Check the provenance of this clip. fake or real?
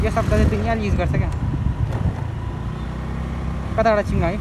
real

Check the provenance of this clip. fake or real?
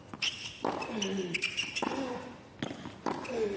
real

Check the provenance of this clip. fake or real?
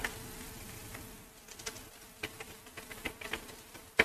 real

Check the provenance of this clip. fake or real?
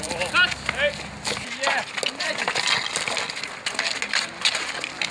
real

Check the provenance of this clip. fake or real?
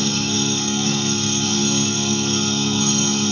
fake